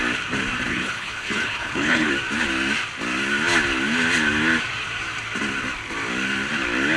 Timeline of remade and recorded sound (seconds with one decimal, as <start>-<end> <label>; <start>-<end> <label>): 0.0-0.7 recorded; 0.7-2.1 remade; 2.1-7.0 recorded